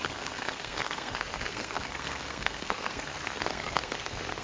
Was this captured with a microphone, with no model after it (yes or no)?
no